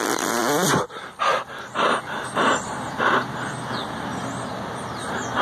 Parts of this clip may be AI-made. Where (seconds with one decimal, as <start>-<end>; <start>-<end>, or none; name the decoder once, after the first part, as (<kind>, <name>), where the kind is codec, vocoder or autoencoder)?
none